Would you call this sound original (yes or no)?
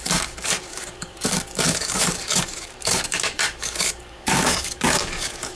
no